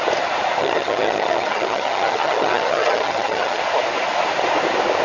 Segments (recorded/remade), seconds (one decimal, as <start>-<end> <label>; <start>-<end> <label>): 0.0-0.6 recorded; 0.6-3.6 remade; 3.6-5.0 recorded